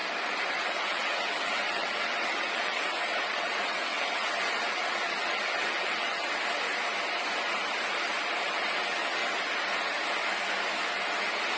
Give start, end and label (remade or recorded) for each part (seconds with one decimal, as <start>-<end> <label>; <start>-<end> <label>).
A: 0.0-0.5 recorded; 0.5-6.2 remade; 6.2-8.5 recorded; 8.5-9.2 remade; 9.2-11.6 recorded